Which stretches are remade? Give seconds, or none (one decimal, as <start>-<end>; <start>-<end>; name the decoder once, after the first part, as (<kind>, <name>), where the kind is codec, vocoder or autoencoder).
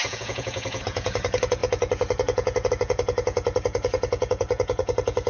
0.0-5.3 (vocoder, Vocos)